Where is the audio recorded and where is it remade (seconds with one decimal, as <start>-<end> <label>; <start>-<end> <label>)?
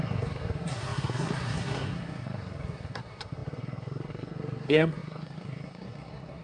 0.0-6.4 remade